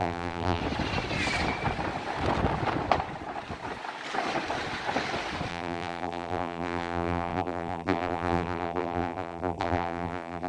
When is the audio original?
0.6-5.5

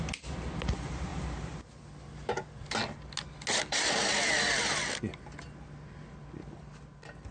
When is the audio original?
0.0-7.3